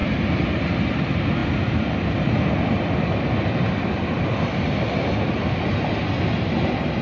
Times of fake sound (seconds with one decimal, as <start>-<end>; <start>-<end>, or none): none